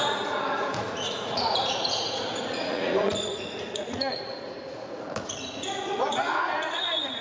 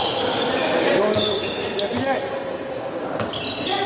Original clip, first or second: second